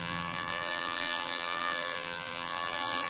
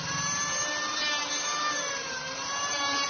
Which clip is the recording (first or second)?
second